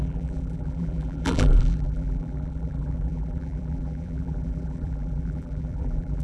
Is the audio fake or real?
fake